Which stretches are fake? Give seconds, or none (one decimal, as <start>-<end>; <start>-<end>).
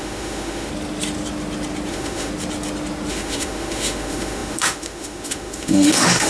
0.0-0.7; 1.9-2.3; 3.1-6.3